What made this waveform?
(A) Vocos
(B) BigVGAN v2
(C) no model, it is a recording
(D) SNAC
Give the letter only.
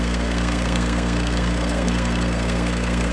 D